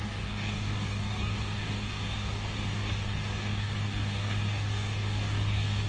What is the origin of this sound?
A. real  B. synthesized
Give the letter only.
B